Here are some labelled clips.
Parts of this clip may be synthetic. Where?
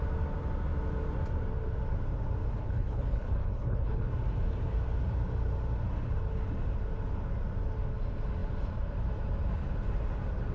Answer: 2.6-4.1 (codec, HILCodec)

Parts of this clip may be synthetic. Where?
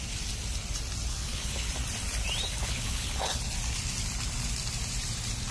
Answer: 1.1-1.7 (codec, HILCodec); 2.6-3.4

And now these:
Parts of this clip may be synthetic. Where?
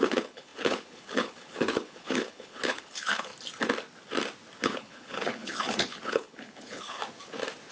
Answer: 0.0-3.3 (codec, HILCodec); 4.6-7.0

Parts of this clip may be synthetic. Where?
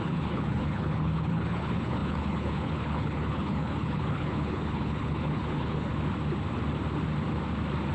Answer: 0.0-5.9 (codec, HILCodec)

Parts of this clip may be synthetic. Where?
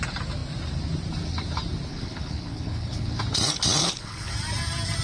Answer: 1.9-3.2 (codec, HILCodec); 3.8-4.3